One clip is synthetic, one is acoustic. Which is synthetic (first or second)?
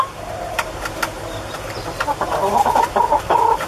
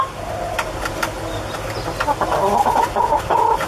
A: first